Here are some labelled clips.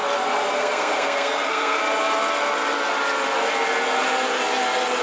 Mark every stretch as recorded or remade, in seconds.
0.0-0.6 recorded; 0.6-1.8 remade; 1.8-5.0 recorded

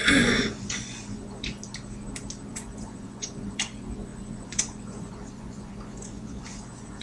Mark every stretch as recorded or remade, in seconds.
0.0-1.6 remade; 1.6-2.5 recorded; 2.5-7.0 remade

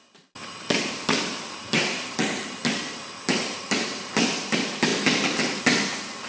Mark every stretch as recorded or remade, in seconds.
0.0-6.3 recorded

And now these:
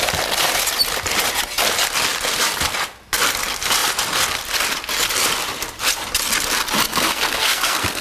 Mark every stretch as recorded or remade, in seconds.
0.0-6.9 recorded; 6.9-8.0 remade

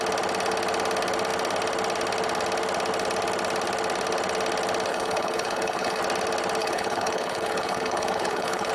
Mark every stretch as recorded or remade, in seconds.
0.0-4.9 recorded; 4.9-6.0 remade; 6.0-6.6 recorded; 6.6-8.7 remade